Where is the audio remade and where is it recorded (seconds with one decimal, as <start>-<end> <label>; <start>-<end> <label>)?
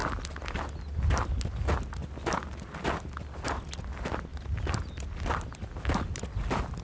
0.0-6.8 recorded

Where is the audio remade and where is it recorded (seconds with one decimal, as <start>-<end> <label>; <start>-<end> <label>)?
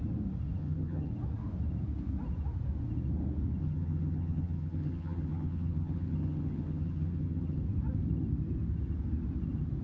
0.0-0.6 recorded; 0.6-1.1 remade; 1.1-3.6 recorded; 3.6-7.6 remade; 7.6-9.8 recorded